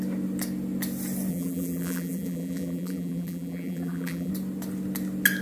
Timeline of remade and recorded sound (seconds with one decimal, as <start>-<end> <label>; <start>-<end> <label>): 0.0-1.3 recorded; 1.3-4.3 remade; 4.3-5.4 recorded